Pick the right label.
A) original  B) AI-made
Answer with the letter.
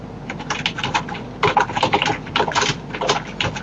A